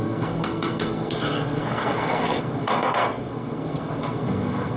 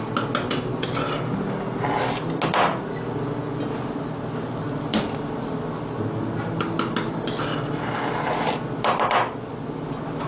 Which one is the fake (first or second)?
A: first